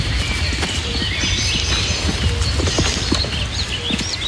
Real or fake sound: real